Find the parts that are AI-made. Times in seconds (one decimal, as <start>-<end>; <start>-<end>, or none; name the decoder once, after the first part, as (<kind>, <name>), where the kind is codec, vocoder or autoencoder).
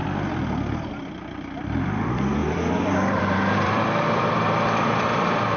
0.9-5.6 (vocoder, BigVGAN v2)